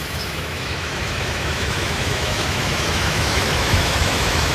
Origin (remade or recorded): remade